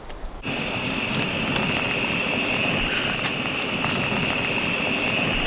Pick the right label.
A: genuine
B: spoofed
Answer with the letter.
A